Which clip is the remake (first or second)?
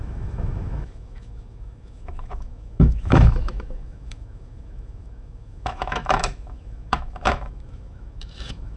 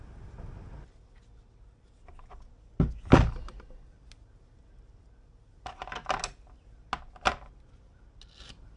first